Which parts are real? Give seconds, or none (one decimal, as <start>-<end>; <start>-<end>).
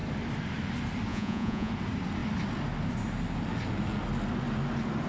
0.0-1.1; 1.7-5.1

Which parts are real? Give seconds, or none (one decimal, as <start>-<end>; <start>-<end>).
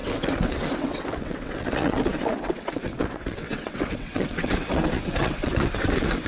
none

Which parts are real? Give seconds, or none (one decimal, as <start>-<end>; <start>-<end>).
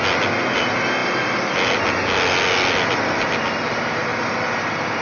0.0-5.0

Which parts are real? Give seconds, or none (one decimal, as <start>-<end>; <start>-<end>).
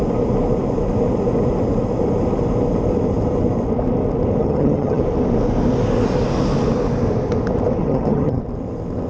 0.0-4.4; 5.0-7.8; 8.4-9.1